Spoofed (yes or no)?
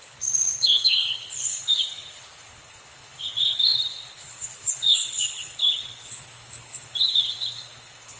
yes